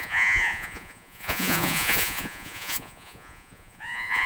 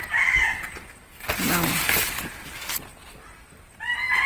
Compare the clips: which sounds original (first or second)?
second